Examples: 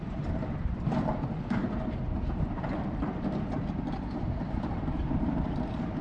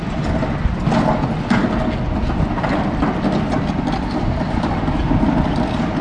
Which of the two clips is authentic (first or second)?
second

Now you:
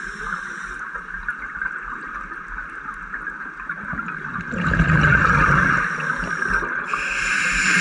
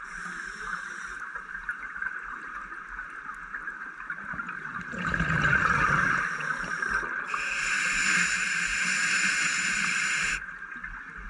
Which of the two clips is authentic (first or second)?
first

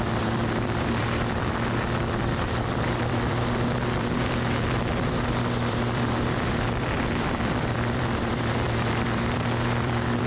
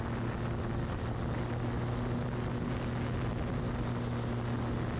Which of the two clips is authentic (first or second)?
second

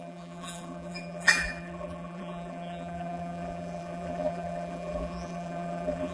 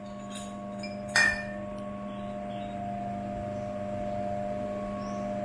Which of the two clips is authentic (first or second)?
second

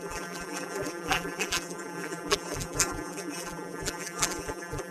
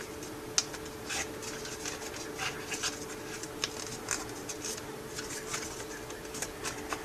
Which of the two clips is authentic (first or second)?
second